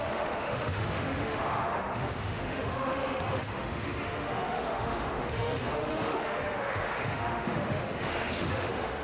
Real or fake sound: fake